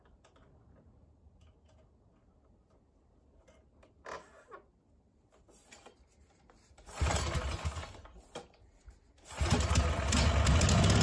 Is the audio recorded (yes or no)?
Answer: yes